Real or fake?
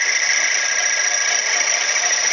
real